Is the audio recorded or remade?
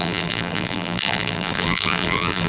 remade